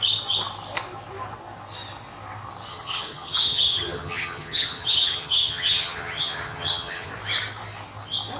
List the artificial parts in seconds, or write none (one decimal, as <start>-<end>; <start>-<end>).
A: 2.7-7.1

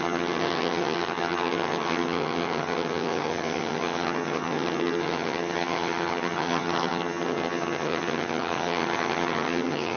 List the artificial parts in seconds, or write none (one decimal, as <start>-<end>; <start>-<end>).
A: 0.0-10.0

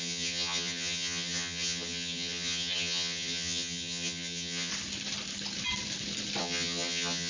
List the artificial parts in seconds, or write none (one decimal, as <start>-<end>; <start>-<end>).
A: 0.0-4.7; 6.4-7.3

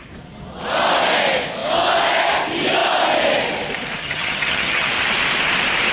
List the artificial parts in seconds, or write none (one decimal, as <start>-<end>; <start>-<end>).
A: 4.0-4.9

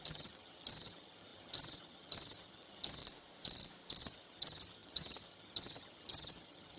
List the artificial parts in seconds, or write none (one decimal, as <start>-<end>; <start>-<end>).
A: 0.0-3.0; 4.0-6.8

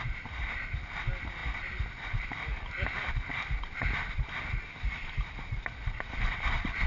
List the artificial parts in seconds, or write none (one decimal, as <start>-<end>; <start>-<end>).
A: none

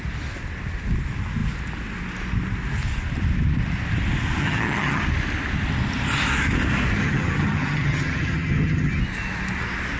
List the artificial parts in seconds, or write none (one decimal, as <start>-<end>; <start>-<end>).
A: 4.4-5.0; 7.0-9.0